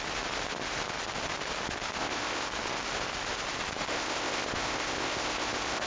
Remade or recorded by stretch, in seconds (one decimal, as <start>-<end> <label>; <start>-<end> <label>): 0.0-2.0 recorded; 2.0-2.5 remade; 2.5-3.9 recorded; 3.9-5.9 remade